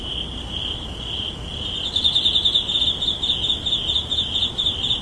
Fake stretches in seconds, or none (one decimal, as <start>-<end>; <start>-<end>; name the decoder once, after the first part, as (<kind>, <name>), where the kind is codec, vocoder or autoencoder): none